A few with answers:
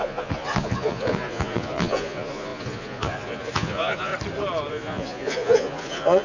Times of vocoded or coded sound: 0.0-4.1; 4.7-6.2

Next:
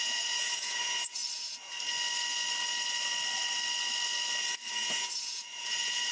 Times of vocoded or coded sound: 0.0-1.2; 4.7-6.1

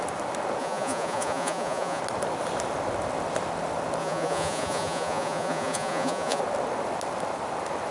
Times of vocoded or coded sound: 0.6-2.0; 4.0-6.4

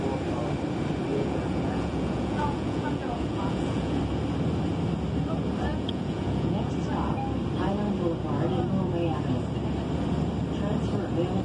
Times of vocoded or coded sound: 1.1-4.0; 5.7-6.7

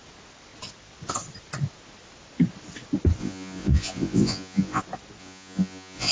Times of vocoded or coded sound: 3.2-4.8; 5.2-6.1

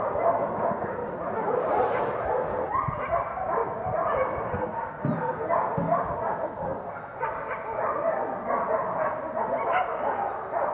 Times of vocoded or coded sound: none